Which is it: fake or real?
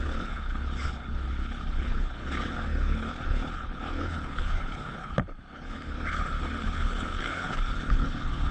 fake